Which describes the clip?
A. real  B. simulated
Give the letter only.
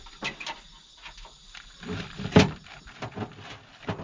A